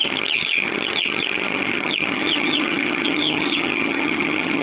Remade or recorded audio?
remade